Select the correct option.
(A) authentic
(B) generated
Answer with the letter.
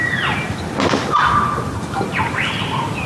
A